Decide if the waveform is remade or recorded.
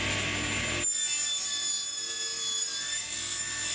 recorded